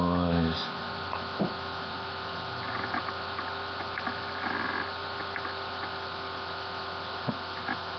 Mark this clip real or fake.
real